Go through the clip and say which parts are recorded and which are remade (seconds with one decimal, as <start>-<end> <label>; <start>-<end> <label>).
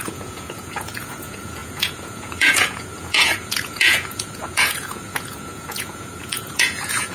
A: 0.0-7.1 remade